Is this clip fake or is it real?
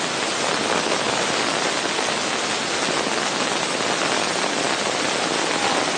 real